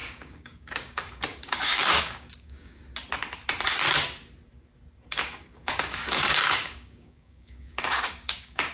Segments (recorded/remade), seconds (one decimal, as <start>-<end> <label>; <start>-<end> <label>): 0.0-2.8 remade; 2.8-5.1 recorded; 5.1-8.7 remade